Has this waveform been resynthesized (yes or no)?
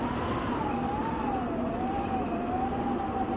no